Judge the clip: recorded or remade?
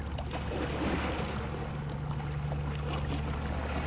recorded